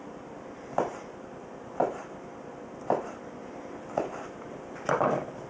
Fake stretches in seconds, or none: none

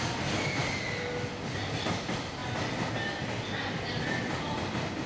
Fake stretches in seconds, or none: none

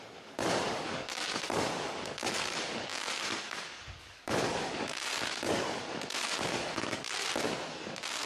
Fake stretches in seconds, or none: 0.0-7.2; 7.7-8.3

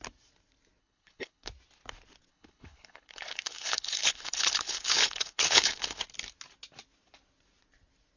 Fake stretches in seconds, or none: 0.8-1.5; 2.3-6.0

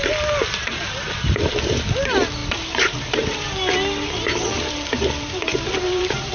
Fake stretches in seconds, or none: 0.6-1.5; 2.4-6.3

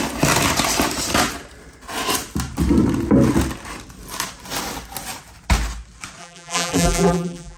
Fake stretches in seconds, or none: 6.2-7.6

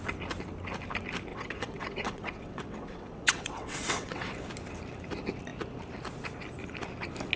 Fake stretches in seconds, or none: 1.3-4.3